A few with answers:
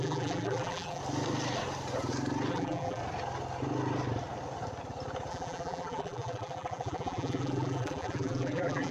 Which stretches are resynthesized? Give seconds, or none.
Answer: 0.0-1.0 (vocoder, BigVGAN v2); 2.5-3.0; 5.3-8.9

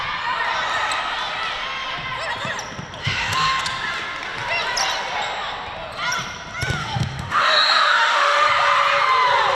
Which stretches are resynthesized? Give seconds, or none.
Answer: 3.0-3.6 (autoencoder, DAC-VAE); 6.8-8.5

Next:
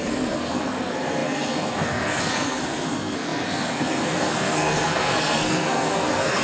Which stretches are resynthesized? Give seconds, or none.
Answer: 0.0-6.4 (codec, SNAC)

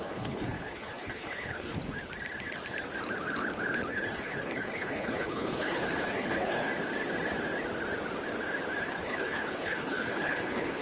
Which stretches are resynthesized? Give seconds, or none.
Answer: 0.0-1.7 (codec, HILCodec); 3.9-6.7; 8.8-10.8

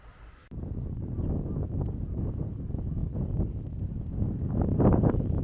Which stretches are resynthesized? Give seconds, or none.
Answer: none